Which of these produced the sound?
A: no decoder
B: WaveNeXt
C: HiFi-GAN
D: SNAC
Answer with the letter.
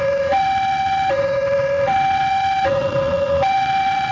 B